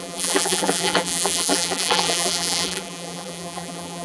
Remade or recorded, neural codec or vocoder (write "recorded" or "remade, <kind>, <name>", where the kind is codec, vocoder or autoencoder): remade, vocoder, BigVGAN v2